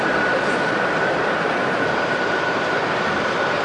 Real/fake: fake